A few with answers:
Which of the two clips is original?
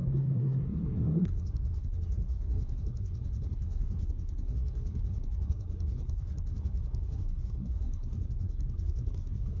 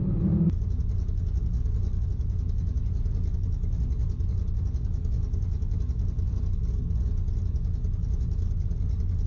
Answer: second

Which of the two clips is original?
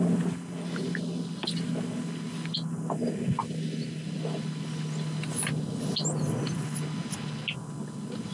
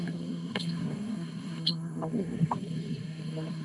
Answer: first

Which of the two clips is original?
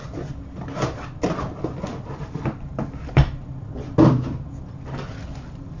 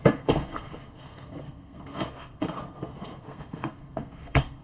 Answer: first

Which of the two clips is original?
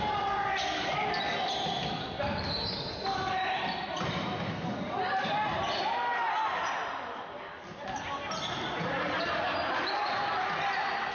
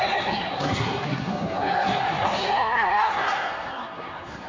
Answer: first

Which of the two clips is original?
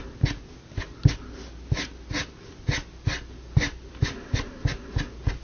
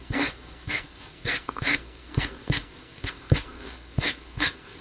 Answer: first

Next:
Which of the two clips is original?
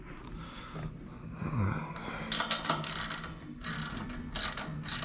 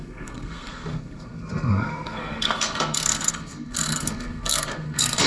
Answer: first